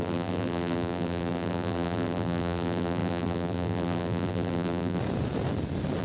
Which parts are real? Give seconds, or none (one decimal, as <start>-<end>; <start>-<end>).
5.0-6.0